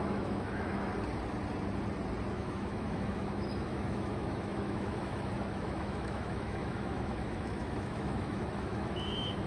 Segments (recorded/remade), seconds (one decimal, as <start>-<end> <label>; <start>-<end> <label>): 0.0-0.9 remade; 0.9-2.3 recorded; 2.3-9.5 remade